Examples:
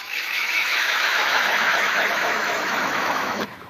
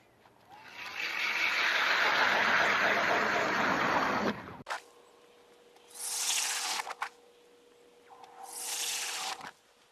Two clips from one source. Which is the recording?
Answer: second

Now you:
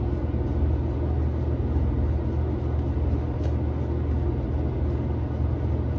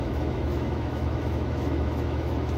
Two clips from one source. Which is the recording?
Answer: first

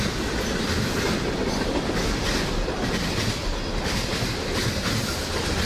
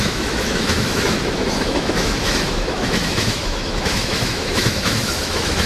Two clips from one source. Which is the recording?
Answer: first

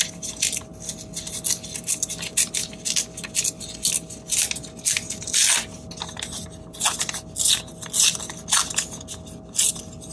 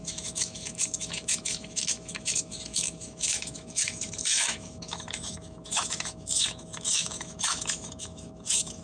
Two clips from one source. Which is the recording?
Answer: first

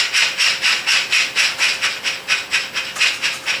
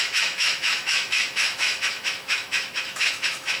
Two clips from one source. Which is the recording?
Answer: first